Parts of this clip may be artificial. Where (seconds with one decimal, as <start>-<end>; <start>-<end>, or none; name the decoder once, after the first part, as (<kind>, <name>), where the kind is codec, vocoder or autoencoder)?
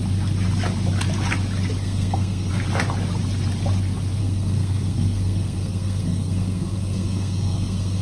1.8-2.5 (codec, SNAC); 4.2-8.0